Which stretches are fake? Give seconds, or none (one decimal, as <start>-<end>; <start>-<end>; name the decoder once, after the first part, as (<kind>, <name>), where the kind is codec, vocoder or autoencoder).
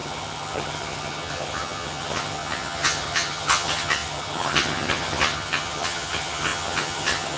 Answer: 0.0-7.4 (vocoder, HiFi-GAN)